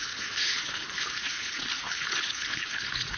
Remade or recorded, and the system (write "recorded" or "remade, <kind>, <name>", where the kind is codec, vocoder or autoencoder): remade, codec, HILCodec